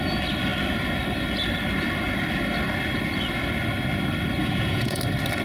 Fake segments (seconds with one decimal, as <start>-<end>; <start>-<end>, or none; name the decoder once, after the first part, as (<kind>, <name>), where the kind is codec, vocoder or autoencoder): 4.4-5.0 (vocoder, Vocos)